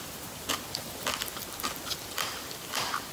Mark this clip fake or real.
real